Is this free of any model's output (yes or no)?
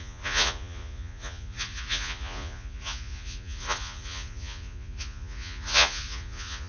no